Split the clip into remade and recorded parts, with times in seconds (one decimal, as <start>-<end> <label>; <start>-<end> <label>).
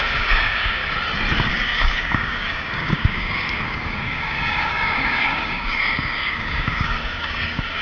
0.0-0.8 remade; 0.8-1.5 recorded; 1.5-7.8 remade